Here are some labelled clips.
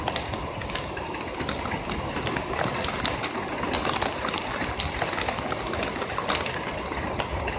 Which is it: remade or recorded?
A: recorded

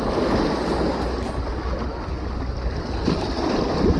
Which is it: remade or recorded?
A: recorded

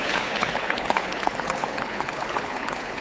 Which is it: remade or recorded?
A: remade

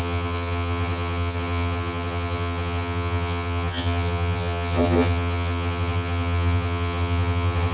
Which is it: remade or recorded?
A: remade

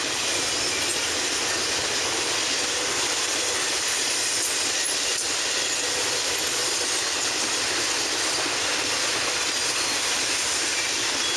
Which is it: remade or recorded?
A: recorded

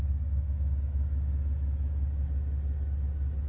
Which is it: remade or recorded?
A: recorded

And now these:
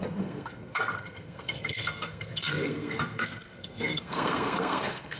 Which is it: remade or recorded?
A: remade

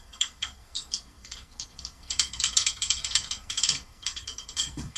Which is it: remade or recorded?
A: remade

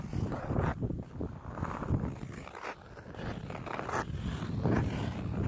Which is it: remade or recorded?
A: recorded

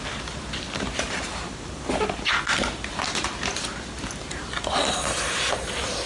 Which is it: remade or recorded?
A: recorded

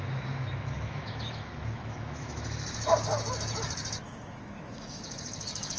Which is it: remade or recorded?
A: remade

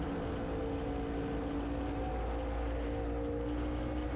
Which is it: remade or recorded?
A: recorded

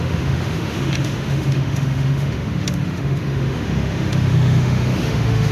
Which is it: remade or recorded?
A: remade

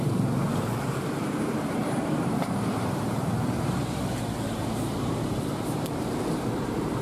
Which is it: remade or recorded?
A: remade